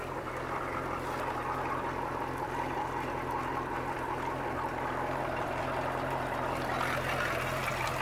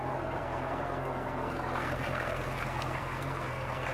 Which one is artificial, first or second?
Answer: second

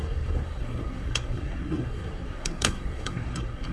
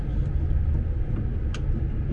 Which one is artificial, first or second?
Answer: first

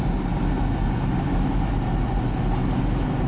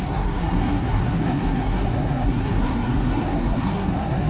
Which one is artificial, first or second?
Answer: second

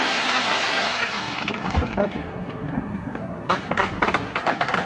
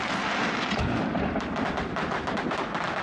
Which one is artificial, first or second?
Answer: first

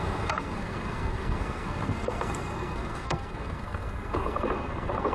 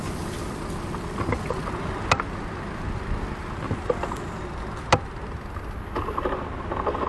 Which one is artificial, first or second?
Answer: first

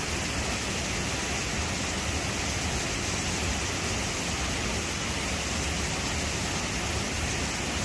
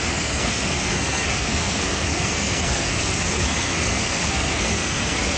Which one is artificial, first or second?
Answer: second